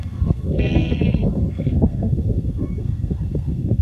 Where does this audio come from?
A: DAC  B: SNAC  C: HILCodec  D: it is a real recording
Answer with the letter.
B